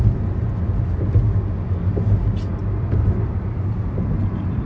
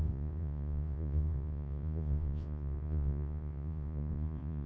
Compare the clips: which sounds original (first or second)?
first